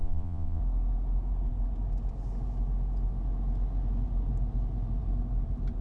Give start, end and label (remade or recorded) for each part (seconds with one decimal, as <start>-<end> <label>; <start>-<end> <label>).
0.0-0.6 remade; 0.6-5.8 recorded